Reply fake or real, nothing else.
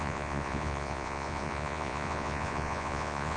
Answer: fake